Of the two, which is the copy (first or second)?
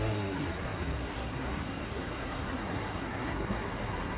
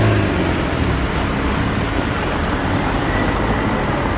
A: first